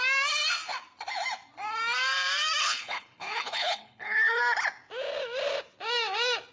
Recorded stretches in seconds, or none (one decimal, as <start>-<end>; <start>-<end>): 0.0-2.6; 4.4-6.5

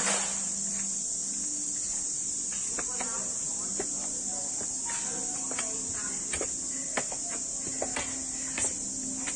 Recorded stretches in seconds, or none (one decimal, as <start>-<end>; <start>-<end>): 0.0-9.4